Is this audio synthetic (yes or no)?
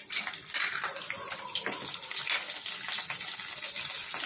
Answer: no